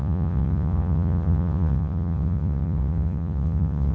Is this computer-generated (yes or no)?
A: yes